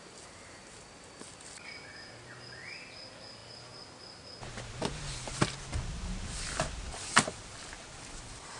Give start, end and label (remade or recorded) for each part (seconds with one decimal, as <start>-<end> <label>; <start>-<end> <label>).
0.0-8.6 recorded